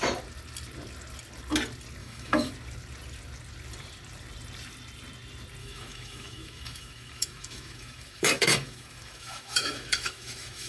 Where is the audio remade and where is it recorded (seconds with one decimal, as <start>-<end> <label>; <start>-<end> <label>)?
0.0-2.0 recorded; 2.0-2.5 remade; 2.5-5.6 recorded; 5.6-10.7 remade